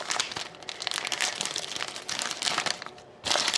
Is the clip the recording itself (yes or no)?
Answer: yes